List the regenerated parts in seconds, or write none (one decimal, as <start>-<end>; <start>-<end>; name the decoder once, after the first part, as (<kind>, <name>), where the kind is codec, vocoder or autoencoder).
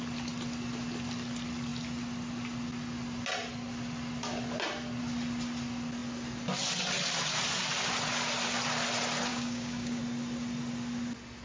9.3-10.0 (codec, DAC)